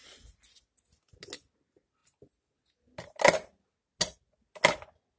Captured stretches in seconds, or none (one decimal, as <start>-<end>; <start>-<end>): 0.0-5.2